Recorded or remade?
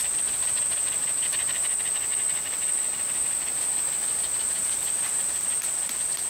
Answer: recorded